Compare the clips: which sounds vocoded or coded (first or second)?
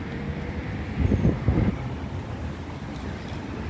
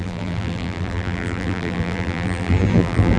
second